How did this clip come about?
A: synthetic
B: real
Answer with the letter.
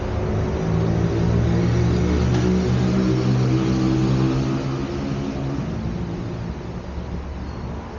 B